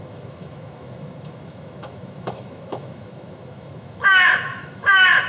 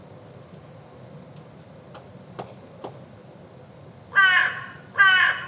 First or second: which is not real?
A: first